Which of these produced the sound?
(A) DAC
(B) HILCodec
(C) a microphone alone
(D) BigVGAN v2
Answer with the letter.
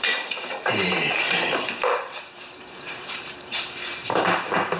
D